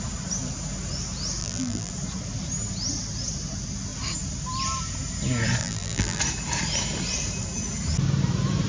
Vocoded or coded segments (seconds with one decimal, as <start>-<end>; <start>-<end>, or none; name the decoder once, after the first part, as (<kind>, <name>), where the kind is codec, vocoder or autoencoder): 1.4-1.9 (vocoder, BigVGAN v2); 5.6-6.2